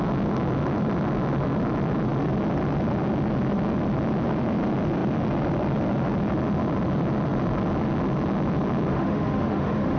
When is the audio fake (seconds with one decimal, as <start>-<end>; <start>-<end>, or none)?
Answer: 8.9-10.0